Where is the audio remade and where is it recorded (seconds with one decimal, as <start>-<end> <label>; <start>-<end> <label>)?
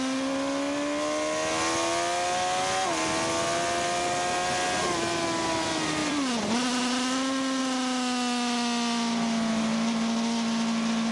0.0-6.0 recorded; 6.0-7.6 remade; 7.6-11.1 recorded